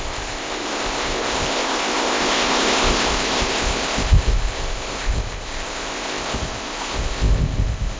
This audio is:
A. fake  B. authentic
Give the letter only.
A